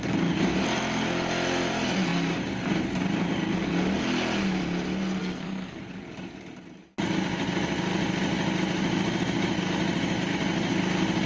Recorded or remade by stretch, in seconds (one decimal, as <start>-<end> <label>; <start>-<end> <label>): 0.0-5.2 recorded; 5.2-5.8 remade; 5.8-11.3 recorded